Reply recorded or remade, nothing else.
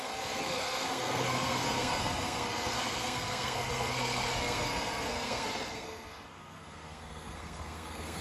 remade